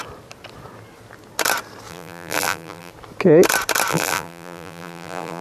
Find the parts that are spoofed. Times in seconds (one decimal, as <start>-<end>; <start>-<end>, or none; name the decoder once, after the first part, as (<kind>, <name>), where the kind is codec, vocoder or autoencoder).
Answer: 1.9-2.9 (vocoder, BigVGAN v2); 3.9-5.4